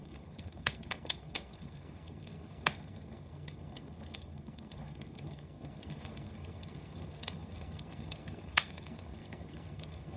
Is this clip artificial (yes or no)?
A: yes